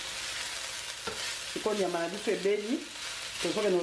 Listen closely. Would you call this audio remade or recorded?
recorded